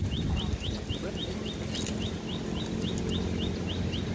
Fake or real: real